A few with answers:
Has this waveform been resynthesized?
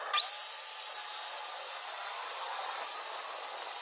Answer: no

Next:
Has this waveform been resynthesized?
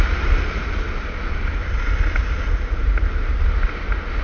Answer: no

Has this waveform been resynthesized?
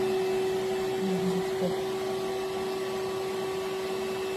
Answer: no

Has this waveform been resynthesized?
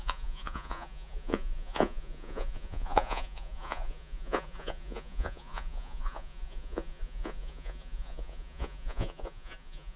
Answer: yes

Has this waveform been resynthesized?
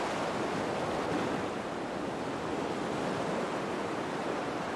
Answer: no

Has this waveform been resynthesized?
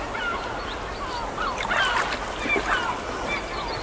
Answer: no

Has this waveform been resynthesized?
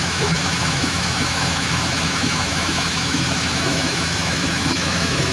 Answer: yes